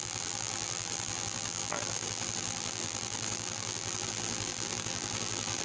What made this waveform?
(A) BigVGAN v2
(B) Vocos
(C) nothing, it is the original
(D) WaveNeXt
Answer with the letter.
A